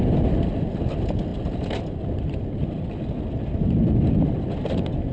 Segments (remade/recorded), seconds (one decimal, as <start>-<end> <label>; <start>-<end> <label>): 0.0-5.1 recorded